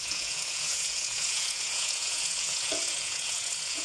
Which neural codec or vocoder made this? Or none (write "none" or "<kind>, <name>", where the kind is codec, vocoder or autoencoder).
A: vocoder, Vocos